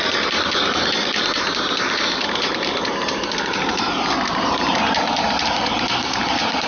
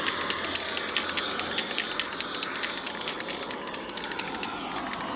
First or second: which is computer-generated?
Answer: first